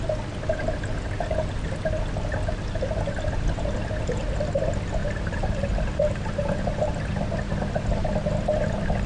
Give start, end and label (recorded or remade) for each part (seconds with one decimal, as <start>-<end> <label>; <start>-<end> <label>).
0.0-5.0 recorded; 5.0-6.9 remade; 6.9-9.1 recorded